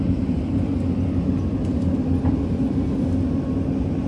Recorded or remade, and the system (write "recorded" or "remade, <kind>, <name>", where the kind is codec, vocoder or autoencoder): recorded